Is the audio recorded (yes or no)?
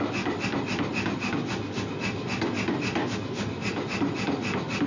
yes